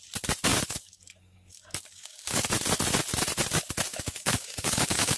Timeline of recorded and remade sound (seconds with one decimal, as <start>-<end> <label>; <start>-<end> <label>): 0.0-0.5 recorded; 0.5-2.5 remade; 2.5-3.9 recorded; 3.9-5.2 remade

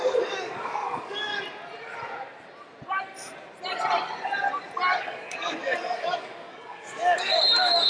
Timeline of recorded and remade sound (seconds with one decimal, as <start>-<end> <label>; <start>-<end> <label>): 0.0-1.3 remade; 1.3-5.0 recorded; 5.0-7.9 remade

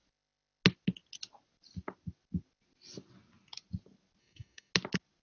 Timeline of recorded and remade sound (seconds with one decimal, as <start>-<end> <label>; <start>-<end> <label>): 0.0-4.2 recorded; 4.2-4.7 remade; 4.7-5.2 recorded

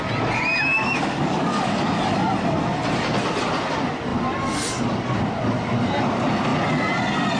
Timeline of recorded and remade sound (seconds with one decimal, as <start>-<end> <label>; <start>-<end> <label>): 0.0-0.8 recorded; 0.8-1.9 remade; 1.9-7.4 recorded